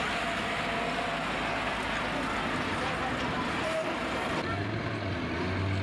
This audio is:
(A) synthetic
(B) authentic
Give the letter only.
B